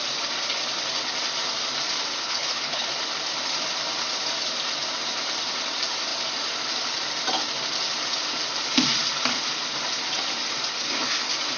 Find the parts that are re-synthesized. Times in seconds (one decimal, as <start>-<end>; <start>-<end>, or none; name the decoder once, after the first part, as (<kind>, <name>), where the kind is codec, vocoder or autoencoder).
2.2-2.9 (codec, HILCodec)